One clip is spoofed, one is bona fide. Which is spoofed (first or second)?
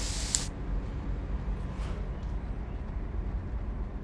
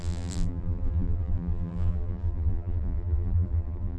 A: second